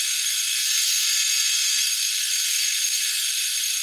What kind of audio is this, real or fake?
fake